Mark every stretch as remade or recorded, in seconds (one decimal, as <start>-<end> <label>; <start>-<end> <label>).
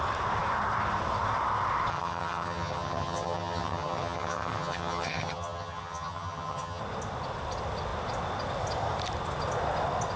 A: 0.0-1.9 recorded; 1.9-6.8 remade; 6.8-10.2 recorded